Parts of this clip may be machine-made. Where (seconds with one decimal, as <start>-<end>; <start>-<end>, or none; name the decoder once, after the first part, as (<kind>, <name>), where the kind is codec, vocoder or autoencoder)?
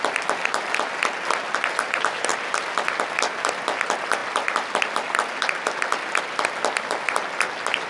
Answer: none